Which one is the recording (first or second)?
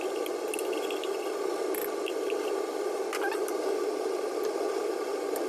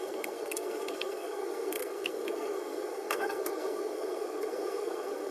first